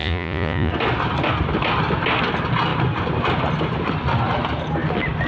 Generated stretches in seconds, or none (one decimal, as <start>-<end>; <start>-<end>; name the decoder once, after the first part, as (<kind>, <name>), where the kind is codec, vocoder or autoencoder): 0.0-0.7 (vocoder, Vocos)